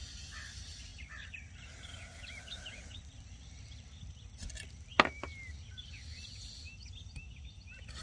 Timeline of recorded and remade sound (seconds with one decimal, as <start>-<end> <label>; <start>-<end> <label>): 0.0-0.9 recorded; 0.9-3.6 remade; 3.6-8.0 recorded